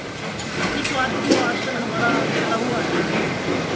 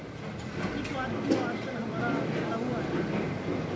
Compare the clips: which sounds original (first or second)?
second